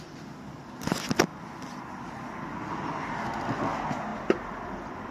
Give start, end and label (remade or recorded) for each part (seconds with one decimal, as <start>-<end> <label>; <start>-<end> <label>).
0.0-5.1 recorded